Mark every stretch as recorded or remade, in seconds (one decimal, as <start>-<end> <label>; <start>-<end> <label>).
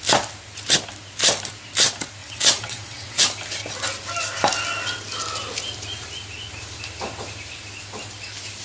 0.0-2.2 recorded; 2.2-3.2 remade; 3.2-8.6 recorded